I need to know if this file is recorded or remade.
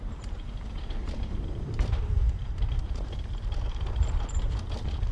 remade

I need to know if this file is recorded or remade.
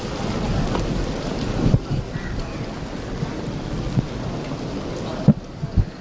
recorded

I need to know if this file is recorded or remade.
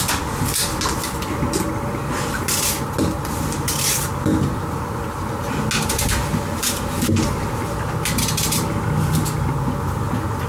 recorded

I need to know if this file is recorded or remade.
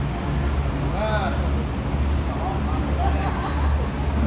recorded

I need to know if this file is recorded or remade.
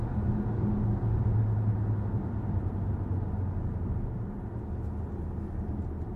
recorded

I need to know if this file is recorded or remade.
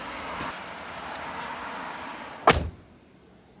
recorded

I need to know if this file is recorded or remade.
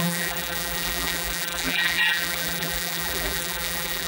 remade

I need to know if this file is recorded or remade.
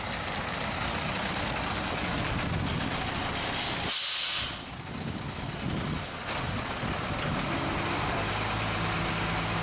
recorded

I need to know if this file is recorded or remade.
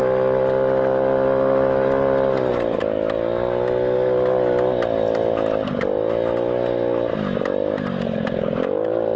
recorded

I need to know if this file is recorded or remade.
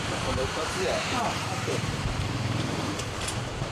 remade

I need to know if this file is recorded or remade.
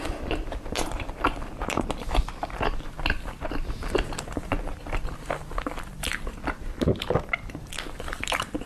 remade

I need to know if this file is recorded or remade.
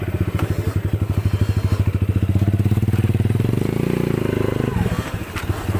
remade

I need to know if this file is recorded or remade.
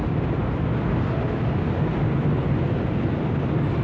recorded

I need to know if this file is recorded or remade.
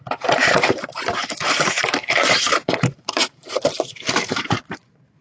remade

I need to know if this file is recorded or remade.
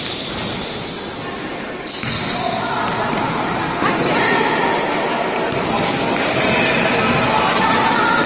recorded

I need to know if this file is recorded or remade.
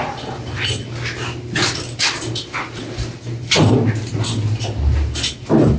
recorded